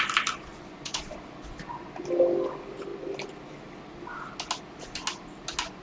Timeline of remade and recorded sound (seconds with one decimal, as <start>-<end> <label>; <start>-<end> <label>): 0.0-0.5 recorded; 0.5-1.0 remade; 1.0-5.8 recorded